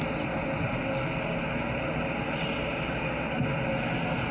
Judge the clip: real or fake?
real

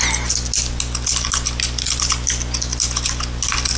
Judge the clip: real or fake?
real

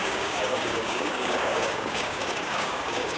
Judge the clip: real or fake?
fake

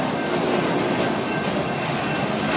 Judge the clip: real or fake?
real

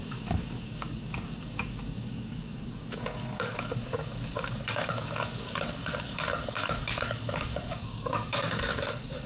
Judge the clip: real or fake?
fake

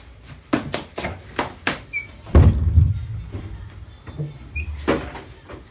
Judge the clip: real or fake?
real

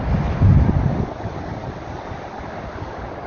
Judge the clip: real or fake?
real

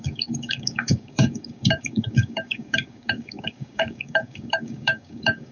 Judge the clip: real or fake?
fake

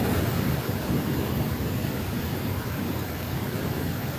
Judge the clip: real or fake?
fake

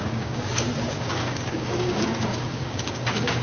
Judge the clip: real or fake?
fake